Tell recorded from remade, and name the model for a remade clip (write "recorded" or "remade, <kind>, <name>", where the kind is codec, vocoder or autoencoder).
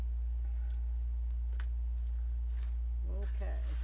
recorded